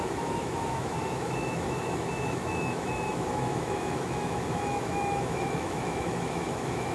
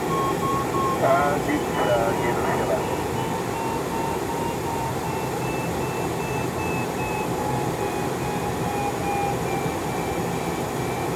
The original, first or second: second